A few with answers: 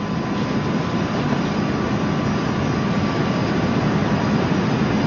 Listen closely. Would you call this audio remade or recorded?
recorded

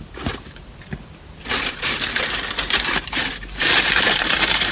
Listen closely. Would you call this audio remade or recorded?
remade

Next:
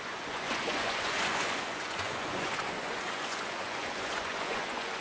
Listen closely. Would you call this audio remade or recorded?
remade